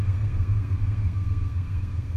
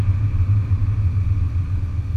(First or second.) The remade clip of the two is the first